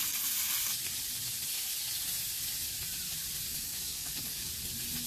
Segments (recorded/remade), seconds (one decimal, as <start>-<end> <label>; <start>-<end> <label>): 0.0-3.5 recorded; 3.5-4.5 remade; 4.5-5.1 recorded